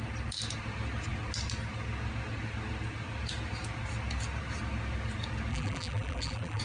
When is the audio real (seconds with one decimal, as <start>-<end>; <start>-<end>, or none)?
0.0-5.5